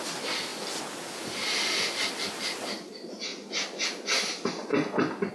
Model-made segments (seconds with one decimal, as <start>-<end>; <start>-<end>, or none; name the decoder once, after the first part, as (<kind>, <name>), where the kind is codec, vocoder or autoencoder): none